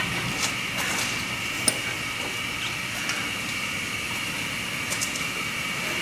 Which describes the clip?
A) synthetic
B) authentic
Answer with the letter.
B